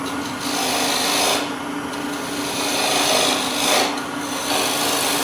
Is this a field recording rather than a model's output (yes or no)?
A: yes